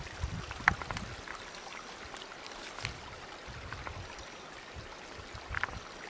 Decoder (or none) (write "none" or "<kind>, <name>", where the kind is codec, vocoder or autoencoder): none